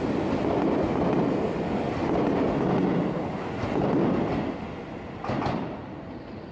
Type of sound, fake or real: real